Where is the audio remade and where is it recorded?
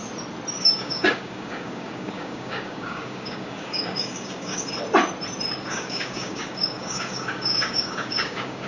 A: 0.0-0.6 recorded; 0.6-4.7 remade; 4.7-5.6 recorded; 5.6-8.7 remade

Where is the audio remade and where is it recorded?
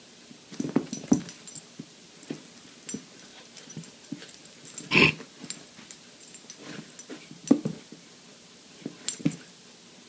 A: 0.0-3.3 recorded; 3.3-4.1 remade; 4.1-10.1 recorded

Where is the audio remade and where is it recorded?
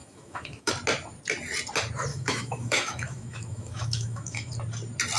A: 0.0-0.7 remade; 0.7-2.1 recorded; 2.1-4.5 remade; 4.5-5.2 recorded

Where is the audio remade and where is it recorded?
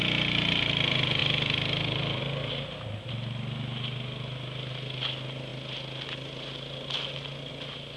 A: 0.0-1.2 recorded; 1.2-2.2 remade; 2.2-8.0 recorded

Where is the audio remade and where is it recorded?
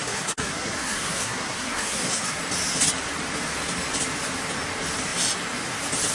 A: 0.0-2.4 remade; 2.4-6.1 recorded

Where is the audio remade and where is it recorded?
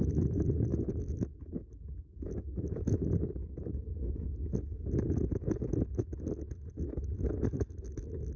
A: 0.0-8.4 remade